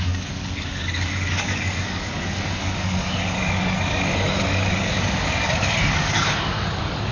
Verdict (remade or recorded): remade